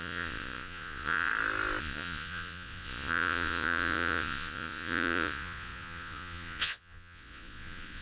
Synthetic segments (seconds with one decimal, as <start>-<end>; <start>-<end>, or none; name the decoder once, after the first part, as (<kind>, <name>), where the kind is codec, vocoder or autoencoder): 0.0-1.3 (vocoder, Vocos); 1.8-8.0